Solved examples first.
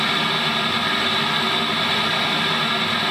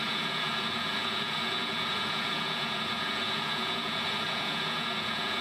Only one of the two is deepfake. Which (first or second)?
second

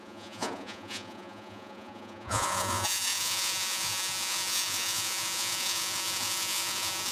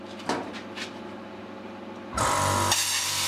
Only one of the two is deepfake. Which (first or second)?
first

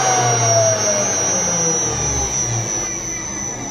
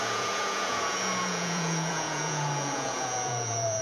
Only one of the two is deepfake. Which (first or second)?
second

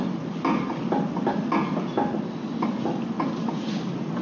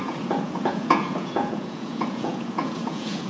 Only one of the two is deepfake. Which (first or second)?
second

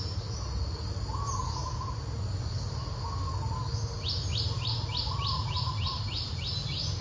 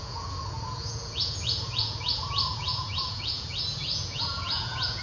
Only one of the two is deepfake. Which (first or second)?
second